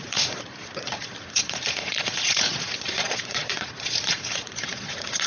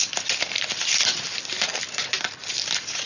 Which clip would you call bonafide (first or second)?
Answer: second